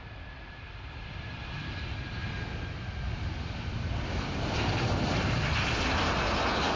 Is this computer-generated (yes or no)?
no